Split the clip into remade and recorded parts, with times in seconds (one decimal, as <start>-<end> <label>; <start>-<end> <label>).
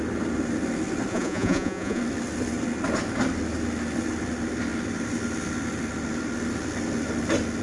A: 0.0-1.1 recorded; 1.1-2.0 remade; 2.0-7.6 recorded